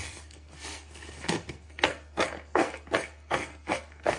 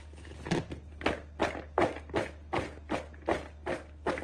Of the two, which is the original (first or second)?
second